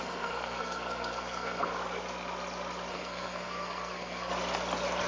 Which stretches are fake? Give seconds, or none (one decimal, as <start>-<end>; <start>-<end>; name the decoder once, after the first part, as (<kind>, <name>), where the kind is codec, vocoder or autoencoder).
0.0-1.7 (codec, SNAC); 2.9-4.3